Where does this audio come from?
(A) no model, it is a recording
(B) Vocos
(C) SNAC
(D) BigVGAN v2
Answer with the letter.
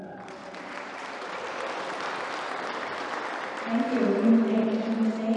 A